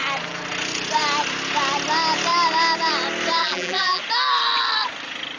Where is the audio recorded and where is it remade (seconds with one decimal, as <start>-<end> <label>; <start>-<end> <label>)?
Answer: 0.0-3.4 recorded; 3.4-4.0 remade; 4.0-5.4 recorded